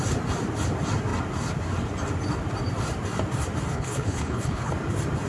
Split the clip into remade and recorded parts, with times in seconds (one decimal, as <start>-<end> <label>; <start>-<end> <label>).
0.0-3.7 recorded; 3.7-4.7 remade; 4.7-5.3 recorded